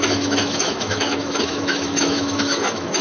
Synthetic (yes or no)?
yes